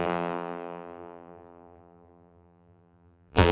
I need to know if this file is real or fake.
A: fake